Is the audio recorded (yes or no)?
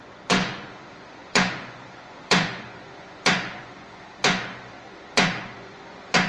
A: no